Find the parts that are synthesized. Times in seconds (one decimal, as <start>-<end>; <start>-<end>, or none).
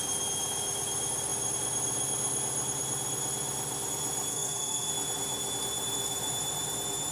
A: 4.3-4.9